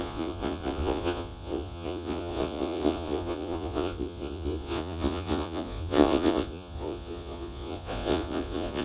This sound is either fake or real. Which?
fake